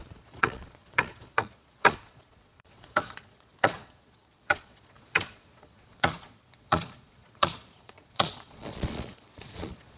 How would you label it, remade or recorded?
remade